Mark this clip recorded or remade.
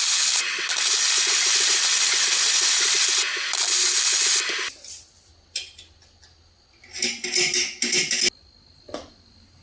recorded